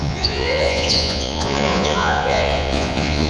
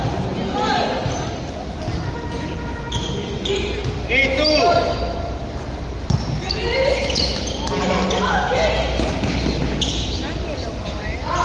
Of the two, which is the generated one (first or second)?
first